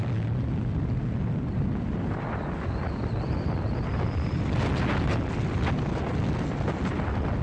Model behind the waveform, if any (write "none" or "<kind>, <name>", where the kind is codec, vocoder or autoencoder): none